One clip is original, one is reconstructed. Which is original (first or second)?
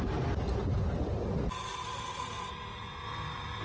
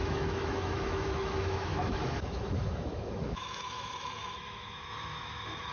first